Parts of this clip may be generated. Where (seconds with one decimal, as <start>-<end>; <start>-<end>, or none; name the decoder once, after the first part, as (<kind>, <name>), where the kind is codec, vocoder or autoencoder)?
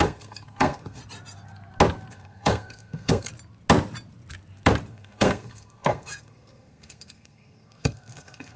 0.0-1.0 (codec, SNAC); 2.1-3.3; 4.9-8.6